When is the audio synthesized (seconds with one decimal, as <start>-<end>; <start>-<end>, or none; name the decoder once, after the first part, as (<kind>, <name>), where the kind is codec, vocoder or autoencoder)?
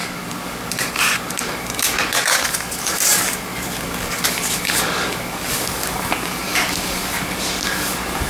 0.0-8.3 (codec, DAC)